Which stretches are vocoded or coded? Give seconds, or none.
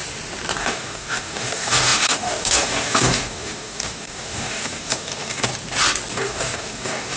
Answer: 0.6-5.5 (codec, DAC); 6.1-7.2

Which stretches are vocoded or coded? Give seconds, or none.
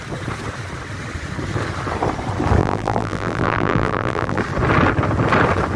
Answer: 2.6-4.4 (vocoder, BigVGAN v2)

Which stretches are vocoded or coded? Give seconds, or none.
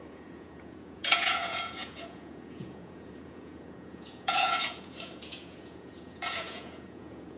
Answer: 0.0-7.4 (vocoder, Vocos)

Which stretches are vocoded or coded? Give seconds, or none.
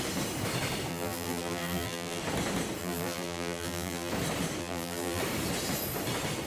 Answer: 0.9-2.2 (vocoder, BigVGAN v2); 2.8-4.1; 4.6-5.2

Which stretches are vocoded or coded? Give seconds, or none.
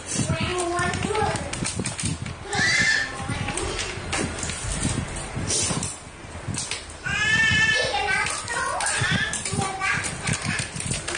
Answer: none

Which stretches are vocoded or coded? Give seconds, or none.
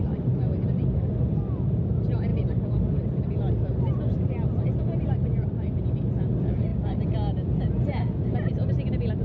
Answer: none